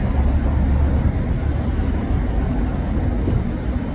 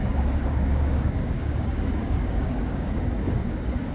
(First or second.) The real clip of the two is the first